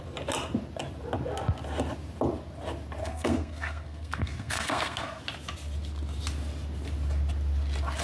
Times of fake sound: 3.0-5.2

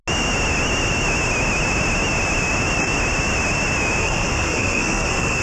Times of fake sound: 4.0-5.4